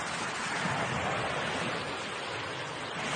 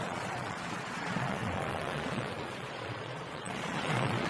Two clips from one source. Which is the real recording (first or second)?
first